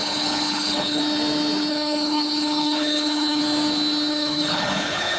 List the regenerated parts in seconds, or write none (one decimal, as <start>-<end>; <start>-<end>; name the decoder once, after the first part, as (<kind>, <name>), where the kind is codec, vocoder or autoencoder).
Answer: 0.0-1.0 (codec, HILCodec); 1.7-3.4; 4.1-5.2